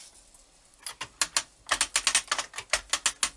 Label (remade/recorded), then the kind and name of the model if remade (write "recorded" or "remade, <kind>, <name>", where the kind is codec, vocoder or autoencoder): recorded